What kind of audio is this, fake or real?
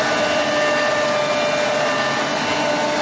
real